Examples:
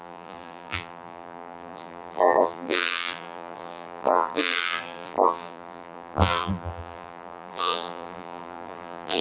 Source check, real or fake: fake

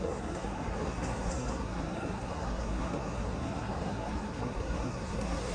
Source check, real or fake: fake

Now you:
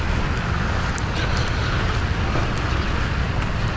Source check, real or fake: real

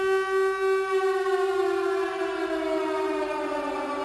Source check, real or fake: real